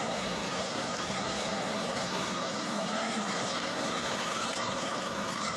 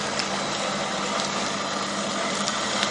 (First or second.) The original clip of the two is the second